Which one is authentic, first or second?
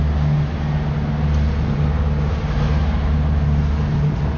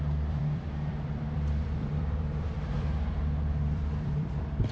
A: first